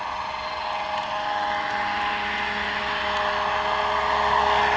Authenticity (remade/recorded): recorded